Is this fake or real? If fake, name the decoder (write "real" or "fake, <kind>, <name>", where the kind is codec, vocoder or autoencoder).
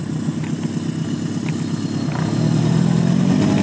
real